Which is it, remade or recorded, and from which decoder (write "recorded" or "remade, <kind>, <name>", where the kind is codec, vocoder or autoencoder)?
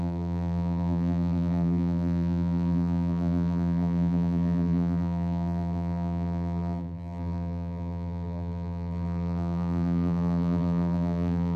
remade, vocoder, BigVGAN v2